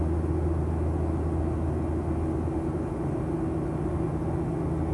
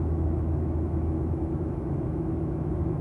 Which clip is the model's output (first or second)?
second